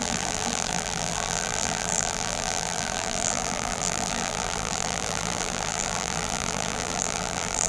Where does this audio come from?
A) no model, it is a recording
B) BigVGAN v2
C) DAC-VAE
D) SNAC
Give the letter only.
B